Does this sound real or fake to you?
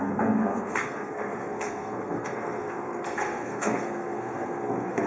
fake